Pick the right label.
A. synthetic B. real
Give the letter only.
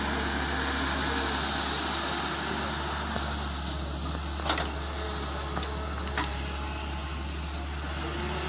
B